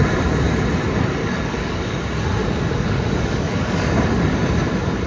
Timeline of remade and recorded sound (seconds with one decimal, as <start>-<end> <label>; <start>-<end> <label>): 0.0-1.2 recorded; 1.2-2.0 remade; 2.0-2.4 recorded; 2.4-4.2 remade; 4.2-5.1 recorded